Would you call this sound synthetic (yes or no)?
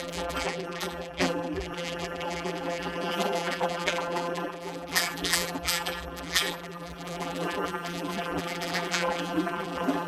yes